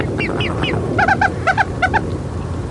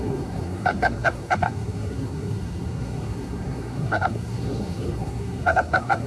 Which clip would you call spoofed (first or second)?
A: second